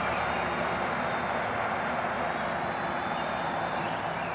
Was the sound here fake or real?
real